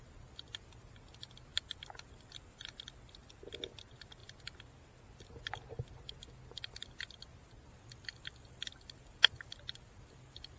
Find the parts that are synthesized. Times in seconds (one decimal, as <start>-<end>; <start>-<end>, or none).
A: none